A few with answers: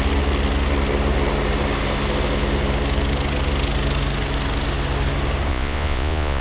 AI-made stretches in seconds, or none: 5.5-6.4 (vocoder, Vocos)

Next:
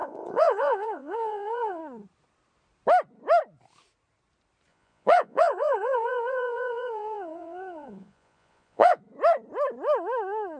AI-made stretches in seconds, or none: 0.0-1.8 (vocoder, Vocos); 4.7-9.0

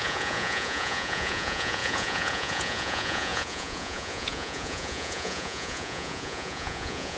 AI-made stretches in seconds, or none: 0.0-7.2 (vocoder, Vocos)

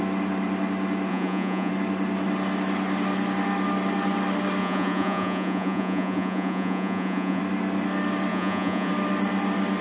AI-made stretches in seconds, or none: 1.1-1.7 (vocoder, Vocos); 4.6-7.4; 8.3-8.9

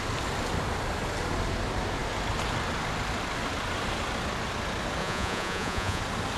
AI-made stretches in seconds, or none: 5.0-6.0 (vocoder, Vocos)